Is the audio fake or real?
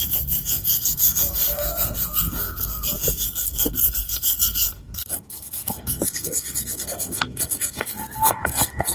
fake